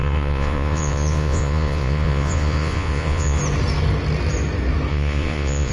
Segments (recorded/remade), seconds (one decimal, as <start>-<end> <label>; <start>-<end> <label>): 0.0-3.4 remade; 3.4-4.9 recorded; 4.9-5.7 remade